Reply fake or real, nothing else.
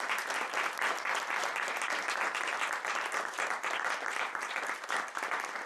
real